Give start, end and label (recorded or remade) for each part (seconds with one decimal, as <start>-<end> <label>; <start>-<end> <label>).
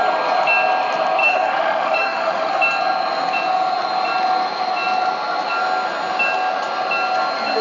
0.0-1.2 recorded; 1.2-2.5 remade; 2.5-7.6 recorded